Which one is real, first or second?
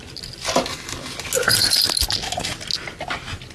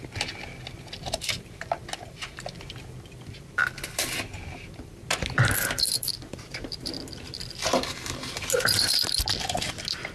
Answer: first